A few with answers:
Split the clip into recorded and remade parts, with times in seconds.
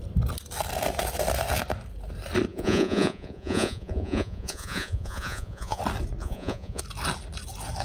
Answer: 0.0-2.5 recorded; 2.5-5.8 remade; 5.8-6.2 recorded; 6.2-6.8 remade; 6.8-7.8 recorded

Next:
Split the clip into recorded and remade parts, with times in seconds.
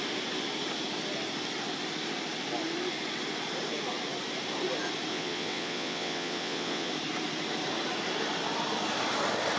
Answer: 0.0-5.1 recorded; 5.1-6.9 remade; 6.9-9.6 recorded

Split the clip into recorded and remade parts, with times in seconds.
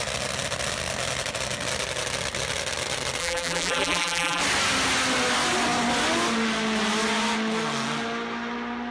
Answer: 0.0-3.2 recorded; 3.2-4.4 remade; 4.4-8.9 recorded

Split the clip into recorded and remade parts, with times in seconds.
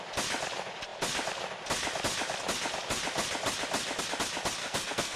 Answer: 0.0-4.6 recorded; 4.6-5.2 remade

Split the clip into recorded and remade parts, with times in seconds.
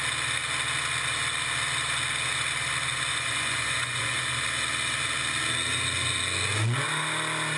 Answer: 0.0-3.1 recorded; 3.1-4.2 remade; 4.2-7.6 recorded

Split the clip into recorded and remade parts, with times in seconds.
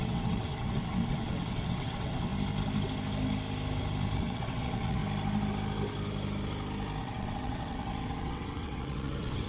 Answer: 0.0-2.3 remade; 2.3-4.2 recorded; 4.2-5.0 remade; 5.0-7.0 recorded; 7.0-9.5 remade